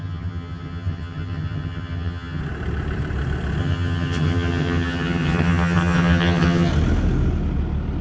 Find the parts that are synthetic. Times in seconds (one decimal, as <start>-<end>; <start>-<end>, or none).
0.0-2.4; 3.6-6.7